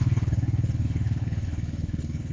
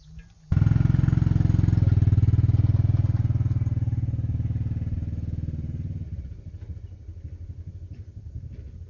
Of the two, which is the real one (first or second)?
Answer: second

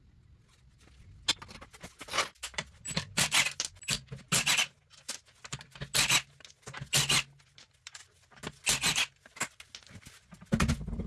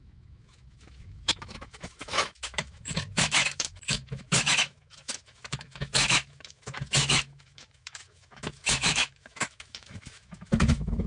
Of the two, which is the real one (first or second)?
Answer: first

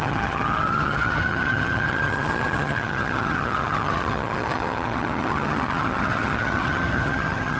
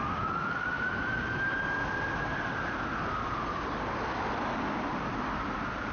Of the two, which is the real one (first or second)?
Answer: second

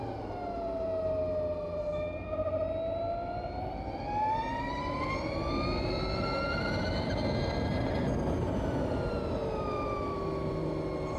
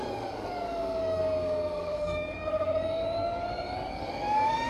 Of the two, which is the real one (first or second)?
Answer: first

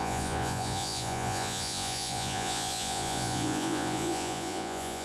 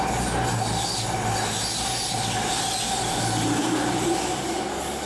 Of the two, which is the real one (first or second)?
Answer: second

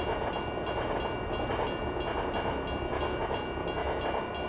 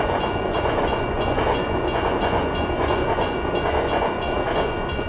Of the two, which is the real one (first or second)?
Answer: first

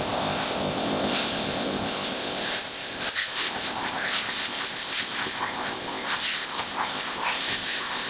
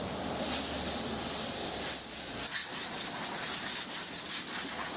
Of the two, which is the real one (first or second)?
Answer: second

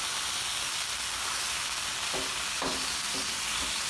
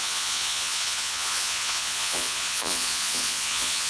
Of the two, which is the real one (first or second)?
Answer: first